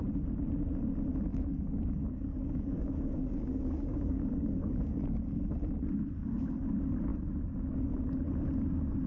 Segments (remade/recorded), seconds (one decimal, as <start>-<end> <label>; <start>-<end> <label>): 0.0-1.3 recorded; 1.3-5.4 remade; 5.4-9.1 recorded